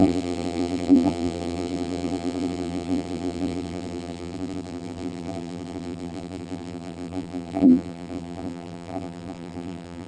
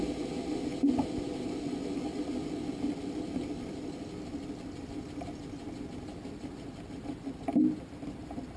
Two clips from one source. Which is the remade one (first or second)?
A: first